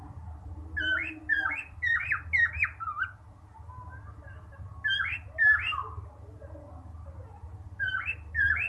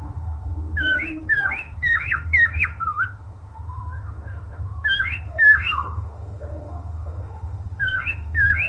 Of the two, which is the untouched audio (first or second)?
first